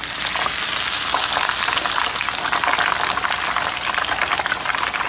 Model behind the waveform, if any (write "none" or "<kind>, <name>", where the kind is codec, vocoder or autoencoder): none